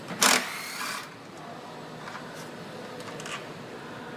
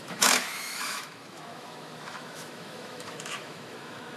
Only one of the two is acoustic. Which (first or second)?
first